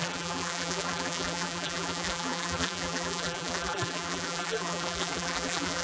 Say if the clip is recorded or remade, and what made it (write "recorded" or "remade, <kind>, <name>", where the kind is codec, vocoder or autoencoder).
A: remade, vocoder, BigVGAN v2